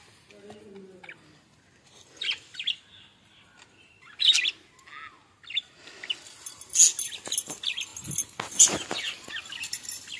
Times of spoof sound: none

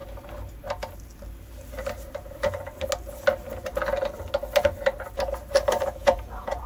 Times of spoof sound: 6.0-6.7 (vocoder, Vocos)